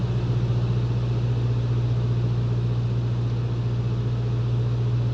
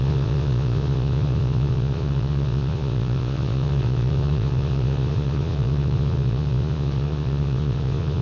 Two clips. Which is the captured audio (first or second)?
first